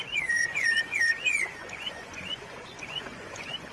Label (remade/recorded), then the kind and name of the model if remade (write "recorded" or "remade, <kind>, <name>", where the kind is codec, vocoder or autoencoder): remade, vocoder, Vocos